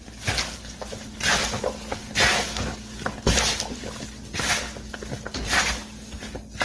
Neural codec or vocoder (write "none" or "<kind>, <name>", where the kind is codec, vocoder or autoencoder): none